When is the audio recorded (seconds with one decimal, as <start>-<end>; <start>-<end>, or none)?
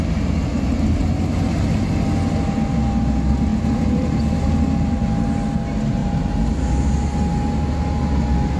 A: 0.0-3.5; 4.5-6.0; 6.9-8.6